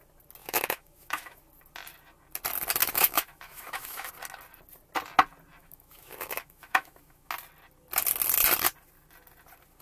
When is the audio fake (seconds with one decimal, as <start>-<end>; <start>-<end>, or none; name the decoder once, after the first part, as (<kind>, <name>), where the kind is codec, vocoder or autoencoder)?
0.4-1.4 (autoencoder, DAC-VAE); 2.8-4.1; 5.6-7.3